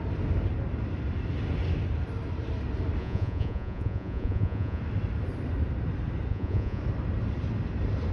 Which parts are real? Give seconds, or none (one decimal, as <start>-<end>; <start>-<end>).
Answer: 0.0-3.0; 4.8-6.3; 6.8-8.1